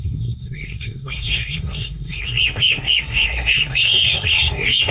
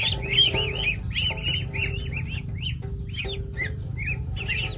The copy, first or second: first